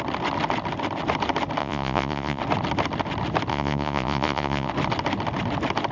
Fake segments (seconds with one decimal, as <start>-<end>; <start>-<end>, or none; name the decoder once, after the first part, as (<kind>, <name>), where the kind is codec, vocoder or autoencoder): 1.6-2.4 (vocoder, Vocos); 3.5-4.7